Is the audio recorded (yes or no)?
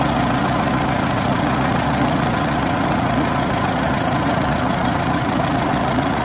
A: no